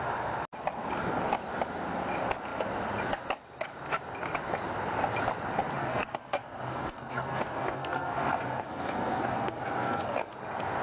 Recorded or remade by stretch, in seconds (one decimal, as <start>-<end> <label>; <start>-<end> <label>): 0.0-5.8 recorded; 5.8-10.3 remade; 10.3-10.8 recorded